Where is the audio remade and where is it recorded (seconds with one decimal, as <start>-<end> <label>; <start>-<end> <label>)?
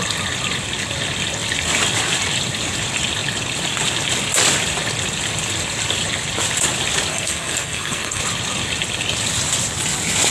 0.0-7.1 recorded; 7.1-8.2 remade; 8.2-10.3 recorded